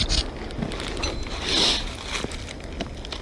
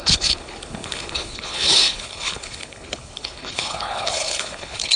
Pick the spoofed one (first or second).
second